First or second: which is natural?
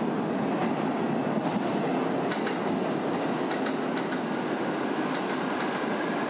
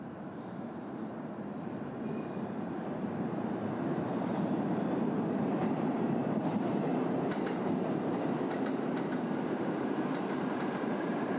first